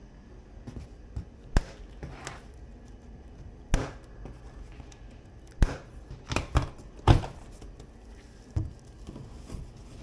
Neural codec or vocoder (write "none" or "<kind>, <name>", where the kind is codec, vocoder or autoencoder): none